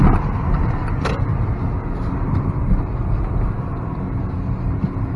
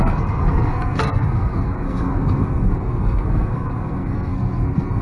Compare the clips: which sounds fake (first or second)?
second